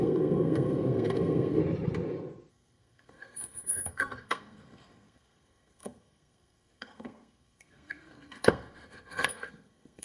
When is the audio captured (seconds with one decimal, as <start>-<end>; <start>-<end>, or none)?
1.6-2.5